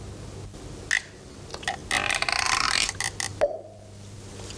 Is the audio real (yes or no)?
yes